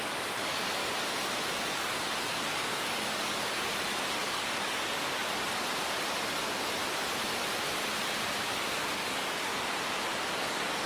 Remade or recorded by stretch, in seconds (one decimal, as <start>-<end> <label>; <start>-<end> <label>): 0.0-0.8 remade; 0.8-1.7 recorded; 1.7-3.7 remade; 3.7-4.2 recorded; 4.2-5.2 remade; 5.2-8.9 recorded; 8.9-9.5 remade; 9.5-10.3 recorded; 10.3-10.9 remade